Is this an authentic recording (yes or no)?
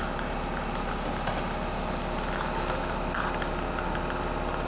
yes